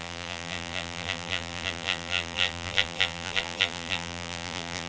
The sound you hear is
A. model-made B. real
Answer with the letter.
A